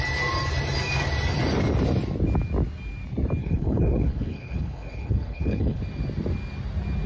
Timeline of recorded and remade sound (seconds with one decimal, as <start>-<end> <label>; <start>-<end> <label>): 0.0-3.4 recorded; 3.4-5.8 remade; 5.8-7.1 recorded